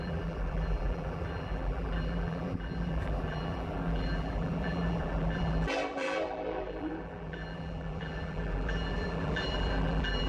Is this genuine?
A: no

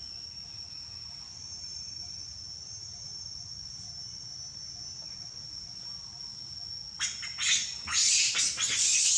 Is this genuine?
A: yes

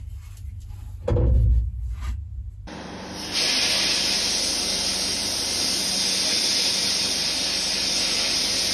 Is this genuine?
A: yes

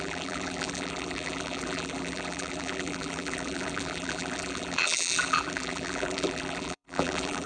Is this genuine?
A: no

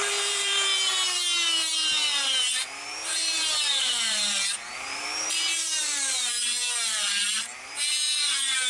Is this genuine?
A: no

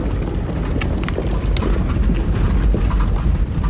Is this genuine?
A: yes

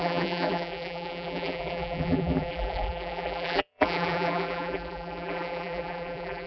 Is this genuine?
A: no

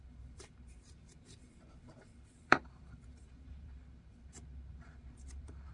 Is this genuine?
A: no